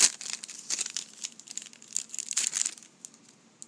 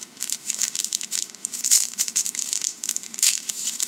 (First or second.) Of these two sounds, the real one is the first